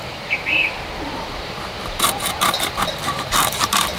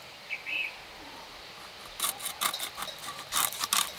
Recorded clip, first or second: second